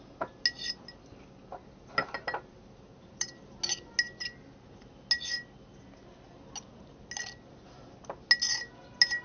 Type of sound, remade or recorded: recorded